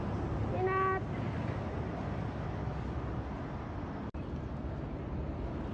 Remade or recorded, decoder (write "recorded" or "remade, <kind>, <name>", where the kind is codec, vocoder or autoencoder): recorded